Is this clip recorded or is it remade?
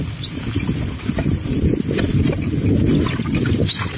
recorded